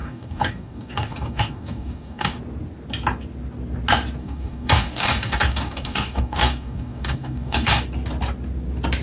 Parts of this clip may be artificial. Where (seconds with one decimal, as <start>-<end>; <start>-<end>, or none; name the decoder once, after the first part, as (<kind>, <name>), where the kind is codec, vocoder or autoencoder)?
0.0-2.4 (codec, DAC); 4.2-7.8